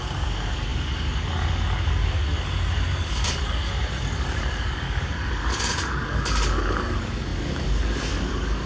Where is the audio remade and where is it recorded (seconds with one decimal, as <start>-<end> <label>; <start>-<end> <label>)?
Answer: 0.0-8.7 remade